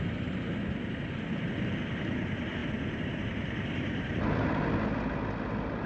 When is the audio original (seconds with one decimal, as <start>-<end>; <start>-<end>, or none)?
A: 0.0-5.9